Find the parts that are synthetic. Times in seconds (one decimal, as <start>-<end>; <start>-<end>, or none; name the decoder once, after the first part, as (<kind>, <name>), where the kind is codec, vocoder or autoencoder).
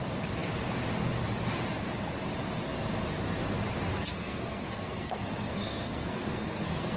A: 3.9-7.0 (codec, SNAC)